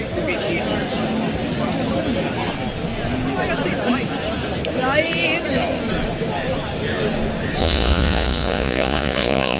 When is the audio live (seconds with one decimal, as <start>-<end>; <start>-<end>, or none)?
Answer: 0.0-7.6